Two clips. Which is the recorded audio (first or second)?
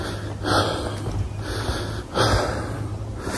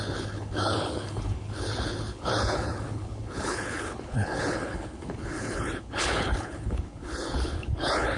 first